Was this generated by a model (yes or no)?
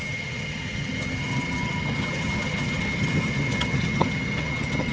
yes